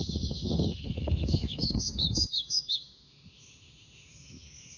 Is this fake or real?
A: fake